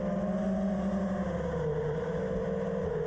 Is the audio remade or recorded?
recorded